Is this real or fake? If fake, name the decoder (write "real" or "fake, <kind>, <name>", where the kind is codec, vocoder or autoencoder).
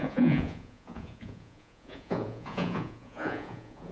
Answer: fake, vocoder, Vocos